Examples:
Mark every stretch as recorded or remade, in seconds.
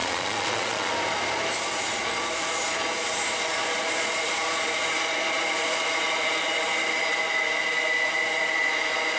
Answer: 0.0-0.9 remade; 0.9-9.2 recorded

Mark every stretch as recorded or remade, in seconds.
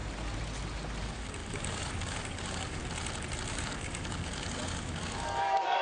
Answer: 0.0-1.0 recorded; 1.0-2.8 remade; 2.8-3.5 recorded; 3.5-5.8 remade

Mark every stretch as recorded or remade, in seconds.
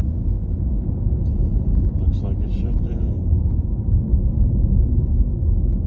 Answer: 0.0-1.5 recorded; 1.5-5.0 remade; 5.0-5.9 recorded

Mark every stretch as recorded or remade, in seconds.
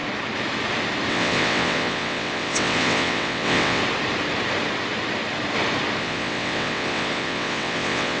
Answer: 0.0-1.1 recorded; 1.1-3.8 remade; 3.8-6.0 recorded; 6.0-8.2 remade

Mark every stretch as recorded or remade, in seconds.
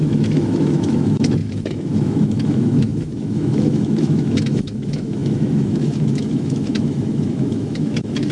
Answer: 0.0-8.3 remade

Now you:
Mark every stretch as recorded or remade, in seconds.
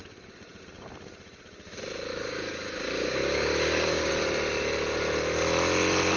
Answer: 0.0-2.1 recorded; 2.1-4.1 remade; 4.1-6.2 recorded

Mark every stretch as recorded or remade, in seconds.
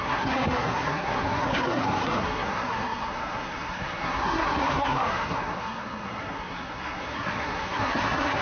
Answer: 0.0-8.4 remade